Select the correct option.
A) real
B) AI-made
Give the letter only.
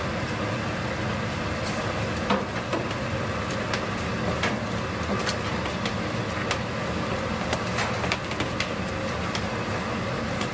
A